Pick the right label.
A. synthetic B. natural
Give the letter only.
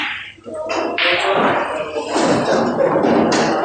B